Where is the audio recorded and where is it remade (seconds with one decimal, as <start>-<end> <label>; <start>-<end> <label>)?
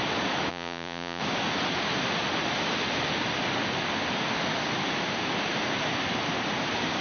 0.0-0.5 recorded; 0.5-1.2 remade; 1.2-7.0 recorded